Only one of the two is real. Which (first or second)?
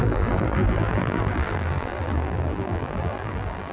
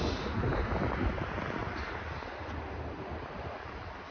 second